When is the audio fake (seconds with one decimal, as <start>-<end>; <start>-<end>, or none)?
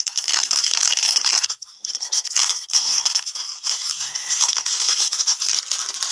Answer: 0.0-5.5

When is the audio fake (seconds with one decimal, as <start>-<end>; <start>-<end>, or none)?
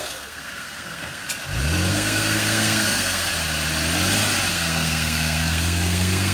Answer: 0.0-1.2; 1.9-3.3; 4.5-6.3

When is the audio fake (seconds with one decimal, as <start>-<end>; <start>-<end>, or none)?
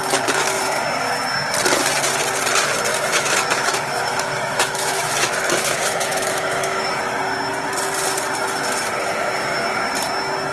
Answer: 2.9-7.0